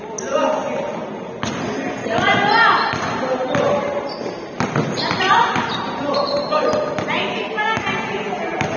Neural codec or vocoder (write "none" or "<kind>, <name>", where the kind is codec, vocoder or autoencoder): none